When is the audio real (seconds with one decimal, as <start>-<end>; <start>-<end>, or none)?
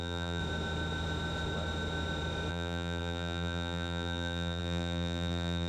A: 0.4-2.5